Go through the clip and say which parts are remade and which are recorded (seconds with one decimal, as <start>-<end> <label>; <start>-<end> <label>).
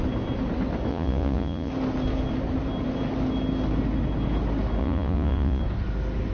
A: 0.0-0.9 recorded; 0.9-1.7 remade; 1.7-4.8 recorded; 4.8-5.6 remade; 5.6-6.3 recorded